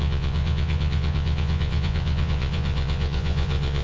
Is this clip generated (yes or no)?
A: yes